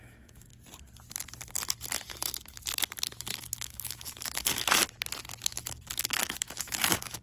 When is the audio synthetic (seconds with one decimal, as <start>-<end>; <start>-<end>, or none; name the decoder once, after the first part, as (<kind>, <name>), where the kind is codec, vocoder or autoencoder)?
0.0-0.5 (autoencoder, DAC-VAE); 3.4-4.8; 5.4-7.2